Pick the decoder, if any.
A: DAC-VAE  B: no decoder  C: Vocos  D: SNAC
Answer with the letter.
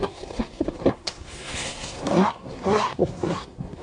D